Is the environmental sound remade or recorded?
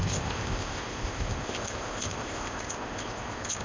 remade